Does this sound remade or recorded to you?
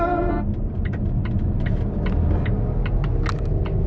recorded